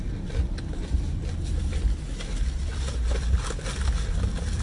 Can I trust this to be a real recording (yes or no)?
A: yes